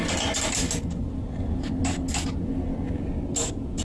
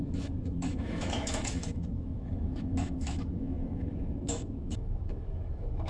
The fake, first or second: second